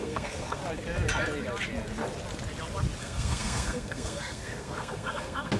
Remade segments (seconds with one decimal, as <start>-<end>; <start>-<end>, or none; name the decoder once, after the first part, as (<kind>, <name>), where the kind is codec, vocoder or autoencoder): 0.0-0.6 (codec, SNAC); 3.0-5.6